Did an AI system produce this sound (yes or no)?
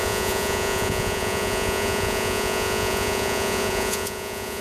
yes